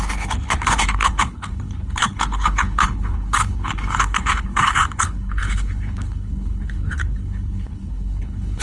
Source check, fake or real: fake